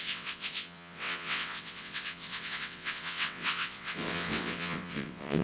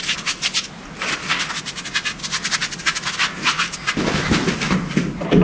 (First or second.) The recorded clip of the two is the second